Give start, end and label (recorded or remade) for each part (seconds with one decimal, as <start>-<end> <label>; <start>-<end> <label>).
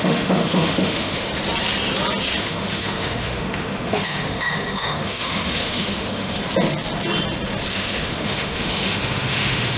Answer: 0.0-1.3 remade; 1.3-2.4 recorded; 2.4-6.4 remade; 6.4-7.7 recorded; 7.7-9.8 remade